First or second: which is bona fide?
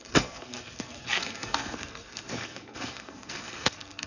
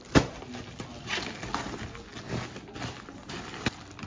second